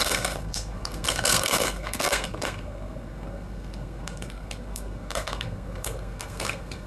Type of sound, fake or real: fake